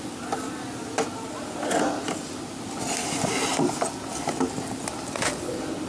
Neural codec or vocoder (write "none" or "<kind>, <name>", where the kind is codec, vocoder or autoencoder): none